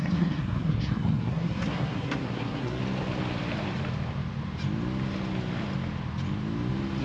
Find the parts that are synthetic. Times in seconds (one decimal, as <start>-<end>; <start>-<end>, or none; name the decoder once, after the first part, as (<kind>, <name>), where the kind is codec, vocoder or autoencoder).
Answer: 0.0-2.8 (codec, SNAC)